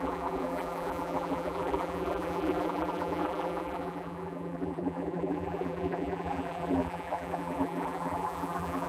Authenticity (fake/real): fake